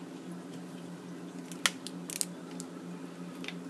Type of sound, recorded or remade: recorded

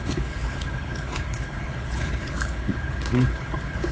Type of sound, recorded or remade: remade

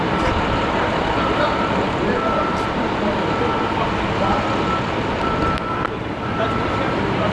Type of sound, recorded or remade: remade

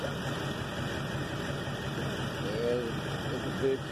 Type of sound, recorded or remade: recorded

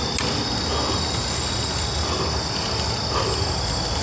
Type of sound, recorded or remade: recorded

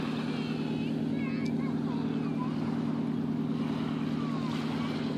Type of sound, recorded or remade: recorded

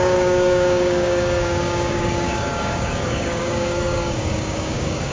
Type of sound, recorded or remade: remade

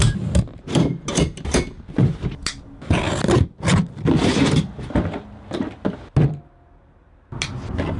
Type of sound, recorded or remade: recorded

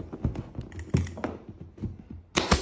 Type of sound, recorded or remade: recorded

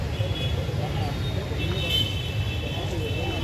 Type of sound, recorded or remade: recorded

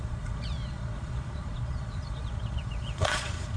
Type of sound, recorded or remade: remade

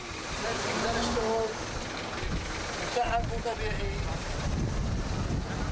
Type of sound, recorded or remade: recorded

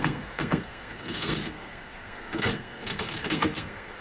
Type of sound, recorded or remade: remade